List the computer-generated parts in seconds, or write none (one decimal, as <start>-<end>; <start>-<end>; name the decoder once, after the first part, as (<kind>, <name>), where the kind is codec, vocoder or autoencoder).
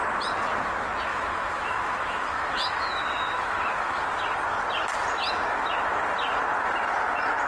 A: 1.1-4.0 (autoencoder, DAC-VAE)